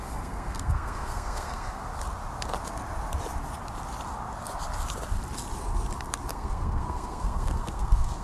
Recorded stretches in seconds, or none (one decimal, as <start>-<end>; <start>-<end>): 1.9-6.3